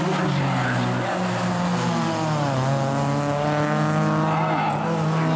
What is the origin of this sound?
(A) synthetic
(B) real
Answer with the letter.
B